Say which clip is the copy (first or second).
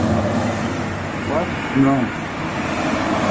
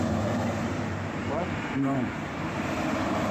second